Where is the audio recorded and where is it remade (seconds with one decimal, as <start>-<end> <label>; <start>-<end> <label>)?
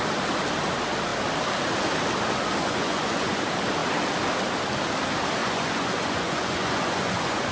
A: 0.0-2.6 recorded; 2.6-3.4 remade; 3.4-5.4 recorded; 5.4-7.5 remade